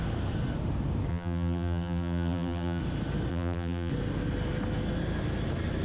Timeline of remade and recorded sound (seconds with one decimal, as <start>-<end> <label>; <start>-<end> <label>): 0.0-1.1 recorded; 1.1-2.8 remade; 2.8-3.3 recorded; 3.3-3.9 remade; 3.9-5.8 recorded

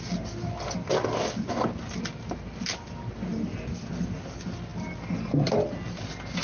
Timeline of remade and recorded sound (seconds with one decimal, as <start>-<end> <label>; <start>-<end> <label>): 0.0-6.4 recorded